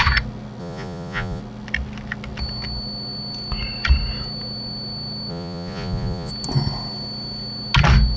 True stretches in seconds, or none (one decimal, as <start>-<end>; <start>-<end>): 0.0-0.6; 1.4-5.3; 6.3-8.2